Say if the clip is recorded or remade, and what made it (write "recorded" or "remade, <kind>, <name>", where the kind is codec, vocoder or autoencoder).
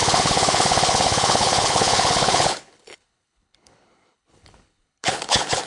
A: remade, codec, HILCodec